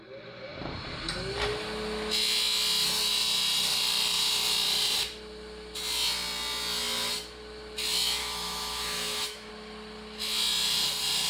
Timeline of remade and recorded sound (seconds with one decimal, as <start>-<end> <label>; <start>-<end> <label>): 0.0-8.2 recorded; 8.2-9.5 remade; 9.5-11.3 recorded